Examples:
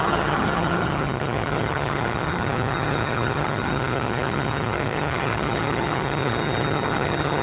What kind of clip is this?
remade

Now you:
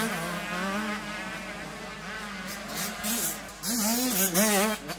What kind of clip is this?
recorded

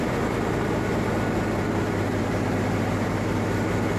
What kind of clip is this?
recorded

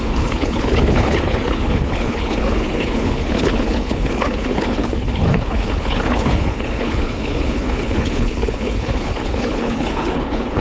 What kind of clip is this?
remade